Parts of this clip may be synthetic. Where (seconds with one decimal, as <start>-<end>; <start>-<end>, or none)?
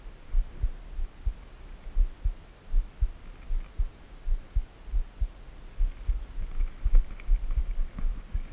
none